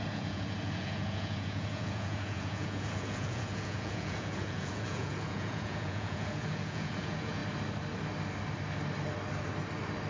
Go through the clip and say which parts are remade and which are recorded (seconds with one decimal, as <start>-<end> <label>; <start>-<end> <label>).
0.0-7.4 remade; 7.4-10.1 recorded